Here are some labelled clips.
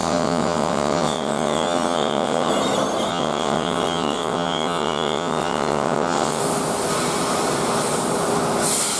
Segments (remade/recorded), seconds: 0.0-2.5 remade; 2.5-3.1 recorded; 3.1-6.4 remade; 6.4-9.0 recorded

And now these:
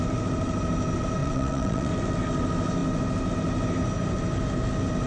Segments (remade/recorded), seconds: 0.0-1.2 recorded; 1.2-1.9 remade; 1.9-5.1 recorded

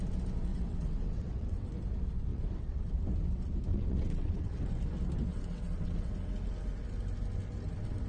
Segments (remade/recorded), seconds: 0.0-0.5 recorded; 0.5-1.7 remade; 1.7-2.3 recorded; 2.3-2.9 remade; 2.9-3.7 recorded; 3.7-4.6 remade; 4.6-5.3 recorded; 5.3-6.1 remade; 6.1-8.1 recorded